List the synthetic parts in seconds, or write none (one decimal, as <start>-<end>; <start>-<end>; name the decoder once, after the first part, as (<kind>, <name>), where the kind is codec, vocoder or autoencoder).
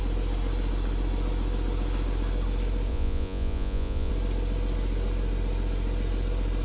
2.9-4.1 (vocoder, Vocos)